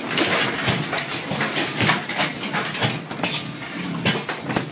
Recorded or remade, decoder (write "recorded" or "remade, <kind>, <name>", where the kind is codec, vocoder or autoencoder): recorded